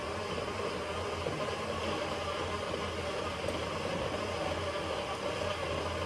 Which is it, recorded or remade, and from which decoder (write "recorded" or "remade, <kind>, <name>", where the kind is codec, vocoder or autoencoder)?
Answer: recorded